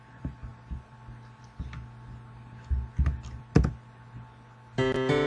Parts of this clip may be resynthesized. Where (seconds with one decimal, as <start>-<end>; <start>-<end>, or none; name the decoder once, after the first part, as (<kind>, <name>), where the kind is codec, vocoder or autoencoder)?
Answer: none